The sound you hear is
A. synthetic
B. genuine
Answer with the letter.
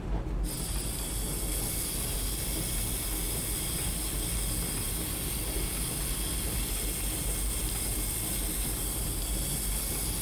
B